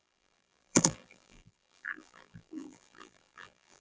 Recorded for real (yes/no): no